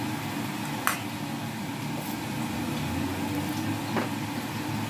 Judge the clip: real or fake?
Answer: real